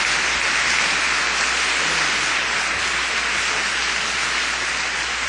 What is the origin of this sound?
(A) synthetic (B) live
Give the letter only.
B